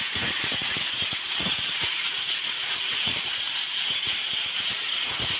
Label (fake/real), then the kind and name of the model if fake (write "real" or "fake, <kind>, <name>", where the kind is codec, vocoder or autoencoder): fake, vocoder, Vocos